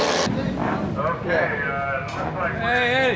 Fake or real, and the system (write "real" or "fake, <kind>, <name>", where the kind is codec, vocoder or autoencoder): real